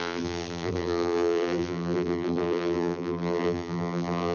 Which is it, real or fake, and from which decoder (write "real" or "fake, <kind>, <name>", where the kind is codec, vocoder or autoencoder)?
fake, vocoder, BigVGAN v2